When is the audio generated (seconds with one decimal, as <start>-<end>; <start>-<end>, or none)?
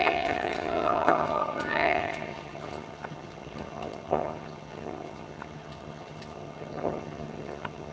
0.0-7.9